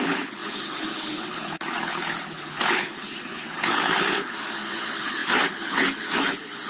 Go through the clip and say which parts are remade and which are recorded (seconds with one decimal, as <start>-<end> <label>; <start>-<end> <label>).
0.0-6.7 remade